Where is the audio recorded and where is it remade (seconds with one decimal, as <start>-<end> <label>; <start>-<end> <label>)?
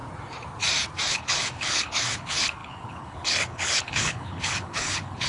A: 0.0-1.1 recorded; 1.1-5.3 remade